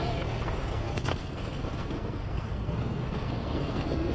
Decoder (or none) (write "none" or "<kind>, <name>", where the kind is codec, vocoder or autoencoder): codec, SNAC